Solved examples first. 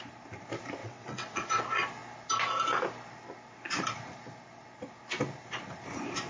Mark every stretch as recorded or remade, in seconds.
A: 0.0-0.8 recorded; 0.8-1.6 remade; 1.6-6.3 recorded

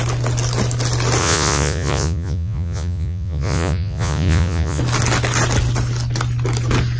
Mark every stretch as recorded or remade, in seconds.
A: 0.0-1.2 recorded; 1.2-4.8 remade; 4.8-7.0 recorded

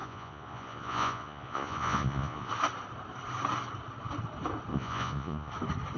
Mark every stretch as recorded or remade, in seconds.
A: 0.0-2.5 remade; 2.5-4.7 recorded; 4.7-5.5 remade; 5.5-6.0 recorded

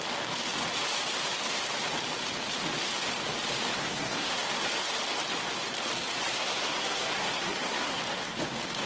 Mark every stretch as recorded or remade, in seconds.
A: 0.0-3.8 recorded; 3.8-4.4 remade; 4.4-6.3 recorded; 6.3-8.0 remade; 8.0-8.9 recorded

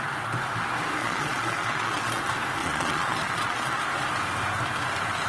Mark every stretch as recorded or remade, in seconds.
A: 0.0-1.0 recorded; 1.0-2.2 remade; 2.2-2.6 recorded; 2.6-3.8 remade; 3.8-5.3 recorded

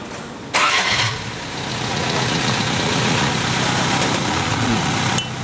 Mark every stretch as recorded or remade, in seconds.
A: 0.0-0.6 recorded; 0.6-1.2 remade; 1.2-1.7 recorded; 1.7-3.3 remade; 3.3-4.2 recorded; 4.2-4.9 remade; 4.9-5.4 recorded

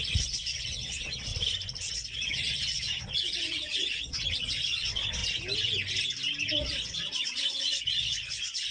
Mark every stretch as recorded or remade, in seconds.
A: 0.0-1.3 remade; 1.3-1.9 recorded; 1.9-5.2 remade; 5.2-6.6 recorded; 6.6-8.7 remade